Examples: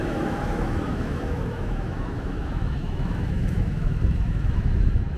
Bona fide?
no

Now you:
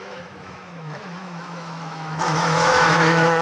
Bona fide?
no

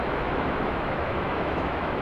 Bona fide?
no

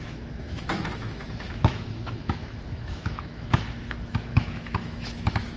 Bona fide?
no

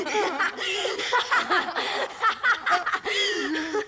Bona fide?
yes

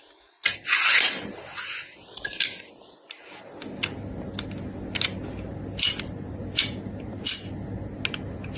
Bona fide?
yes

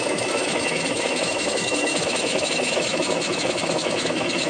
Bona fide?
no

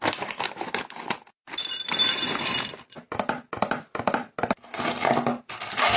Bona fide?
yes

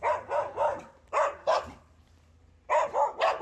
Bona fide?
yes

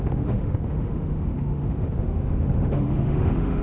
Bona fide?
no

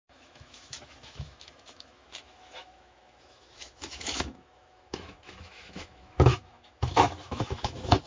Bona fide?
no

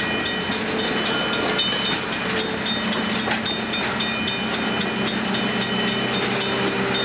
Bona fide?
yes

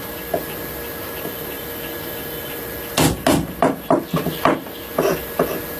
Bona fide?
yes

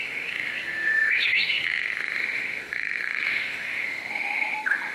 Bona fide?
no